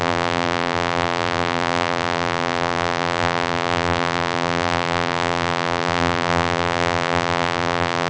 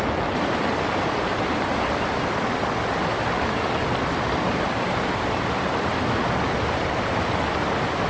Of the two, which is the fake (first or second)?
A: first